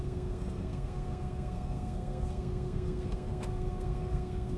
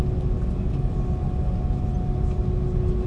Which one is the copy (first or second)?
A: first